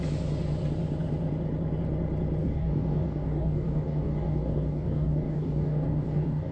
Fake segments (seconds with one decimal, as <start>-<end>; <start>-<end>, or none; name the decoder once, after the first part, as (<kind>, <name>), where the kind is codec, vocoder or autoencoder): 2.4-6.5 (codec, DAC)